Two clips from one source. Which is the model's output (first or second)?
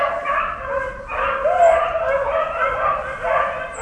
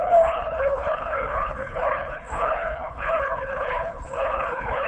second